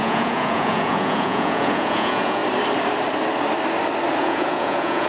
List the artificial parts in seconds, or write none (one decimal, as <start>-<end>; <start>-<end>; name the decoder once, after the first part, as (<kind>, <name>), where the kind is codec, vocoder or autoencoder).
0.0-2.4 (vocoder, Vocos); 4.2-5.1